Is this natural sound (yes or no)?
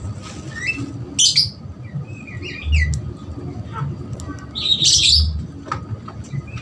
yes